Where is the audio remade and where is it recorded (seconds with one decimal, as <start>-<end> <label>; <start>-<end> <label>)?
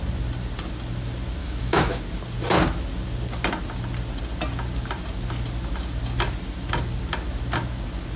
0.0-1.4 recorded; 1.4-2.0 remade; 2.0-8.2 recorded